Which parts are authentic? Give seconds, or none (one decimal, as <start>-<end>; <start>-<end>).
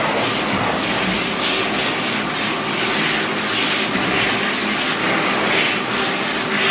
0.0-6.7